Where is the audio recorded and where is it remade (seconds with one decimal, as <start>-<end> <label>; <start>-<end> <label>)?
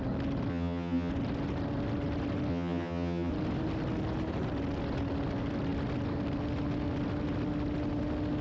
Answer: 0.0-0.5 recorded; 0.5-1.1 remade; 1.1-2.5 recorded; 2.5-3.3 remade; 3.3-8.4 recorded